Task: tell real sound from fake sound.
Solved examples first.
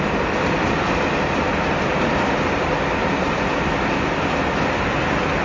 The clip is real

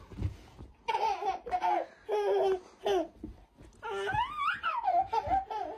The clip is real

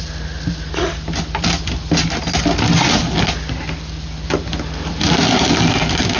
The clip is real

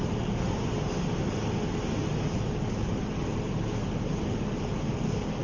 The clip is real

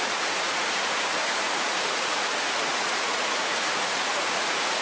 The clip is fake